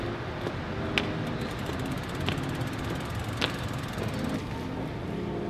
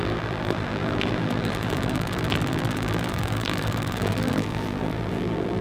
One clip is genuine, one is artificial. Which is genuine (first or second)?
first